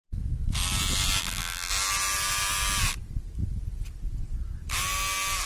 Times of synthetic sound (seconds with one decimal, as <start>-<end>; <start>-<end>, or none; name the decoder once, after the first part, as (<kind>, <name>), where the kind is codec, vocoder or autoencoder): 1.2-1.7 (vocoder, BigVGAN v2)